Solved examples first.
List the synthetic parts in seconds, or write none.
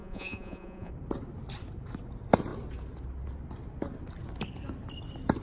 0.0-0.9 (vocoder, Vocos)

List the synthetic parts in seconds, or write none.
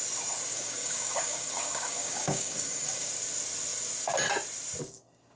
0.5-3.1 (codec, DAC)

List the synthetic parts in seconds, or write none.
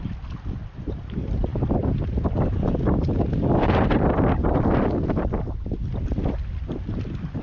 none